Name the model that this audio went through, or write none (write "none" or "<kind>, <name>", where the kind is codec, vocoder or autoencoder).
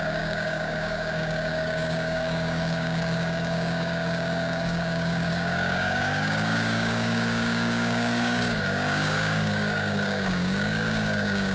codec, DAC